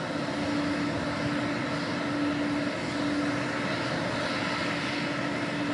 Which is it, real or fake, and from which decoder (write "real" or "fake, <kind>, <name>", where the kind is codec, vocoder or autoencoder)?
real